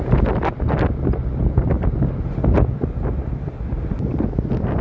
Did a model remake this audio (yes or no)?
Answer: no